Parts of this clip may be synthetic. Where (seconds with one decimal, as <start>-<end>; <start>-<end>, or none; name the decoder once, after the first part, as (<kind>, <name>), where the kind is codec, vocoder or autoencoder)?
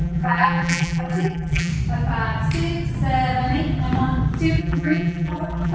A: 0.0-1.7 (vocoder, BigVGAN v2); 4.6-5.7